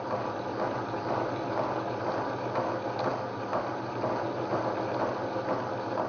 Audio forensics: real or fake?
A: real